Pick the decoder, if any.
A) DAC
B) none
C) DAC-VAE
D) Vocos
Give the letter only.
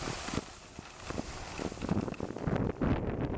B